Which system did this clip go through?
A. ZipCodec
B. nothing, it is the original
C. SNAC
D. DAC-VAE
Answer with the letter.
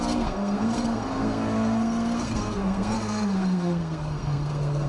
C